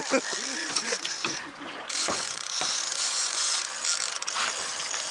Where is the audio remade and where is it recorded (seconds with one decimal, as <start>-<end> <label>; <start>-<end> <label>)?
0.0-0.6 recorded; 0.6-3.7 remade; 3.7-5.1 recorded